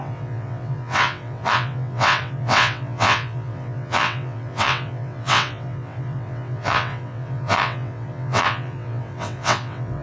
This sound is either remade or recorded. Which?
remade